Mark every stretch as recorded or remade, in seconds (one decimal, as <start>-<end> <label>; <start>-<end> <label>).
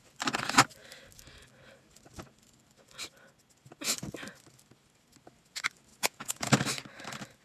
0.0-5.9 recorded; 5.9-6.5 remade; 6.5-7.4 recorded